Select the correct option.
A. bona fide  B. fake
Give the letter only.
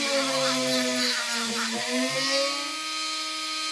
A